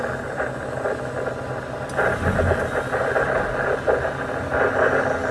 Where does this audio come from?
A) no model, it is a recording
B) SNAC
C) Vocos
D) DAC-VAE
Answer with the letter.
A